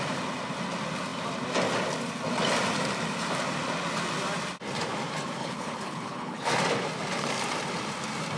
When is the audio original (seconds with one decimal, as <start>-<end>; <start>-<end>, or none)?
0.0-5.4; 6.5-8.4